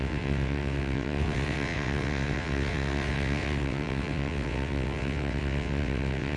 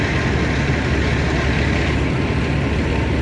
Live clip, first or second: second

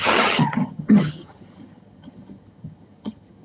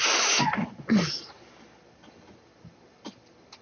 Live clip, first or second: second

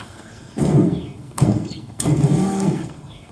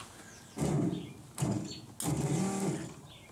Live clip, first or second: second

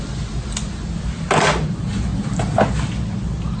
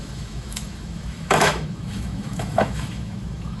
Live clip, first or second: first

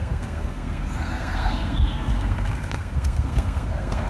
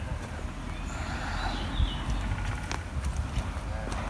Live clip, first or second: second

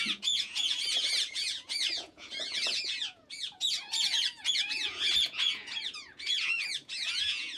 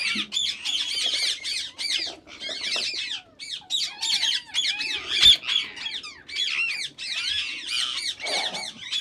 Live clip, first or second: second